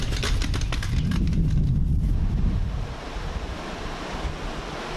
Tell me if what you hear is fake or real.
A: real